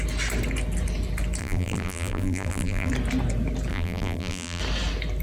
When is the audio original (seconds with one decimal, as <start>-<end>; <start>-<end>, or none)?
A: 0.0-1.4; 2.9-3.7; 4.6-5.2